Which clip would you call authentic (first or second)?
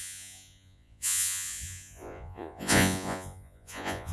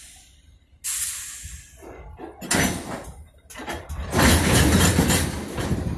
second